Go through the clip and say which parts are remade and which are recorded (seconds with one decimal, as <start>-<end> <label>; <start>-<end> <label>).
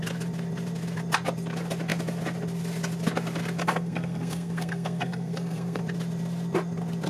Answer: 0.0-3.6 recorded; 3.6-5.8 remade; 5.8-7.1 recorded